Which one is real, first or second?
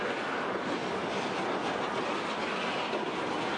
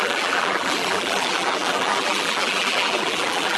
first